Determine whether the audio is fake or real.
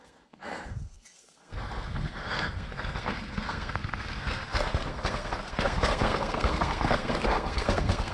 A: fake